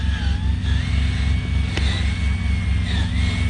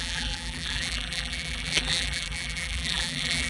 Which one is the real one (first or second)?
first